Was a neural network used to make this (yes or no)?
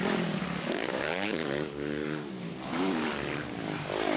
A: yes